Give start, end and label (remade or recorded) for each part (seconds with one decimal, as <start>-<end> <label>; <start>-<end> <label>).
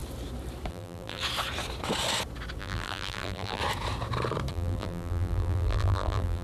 0.0-0.7 recorded; 0.7-1.2 remade; 1.2-2.6 recorded; 2.6-3.6 remade; 3.6-4.5 recorded; 4.5-6.4 remade